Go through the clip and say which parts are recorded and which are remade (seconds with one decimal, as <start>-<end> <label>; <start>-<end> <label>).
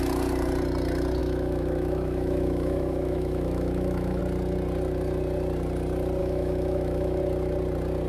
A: 0.0-1.2 recorded; 1.2-4.2 remade; 4.2-6.2 recorded; 6.2-7.2 remade; 7.2-8.1 recorded